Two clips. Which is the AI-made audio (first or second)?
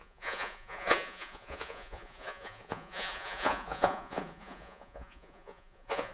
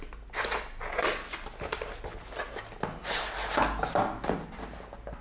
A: first